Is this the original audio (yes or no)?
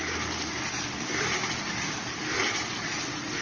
yes